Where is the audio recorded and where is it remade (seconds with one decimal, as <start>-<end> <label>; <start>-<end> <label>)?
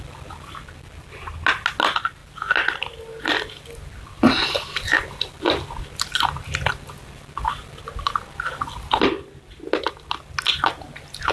0.0-11.3 recorded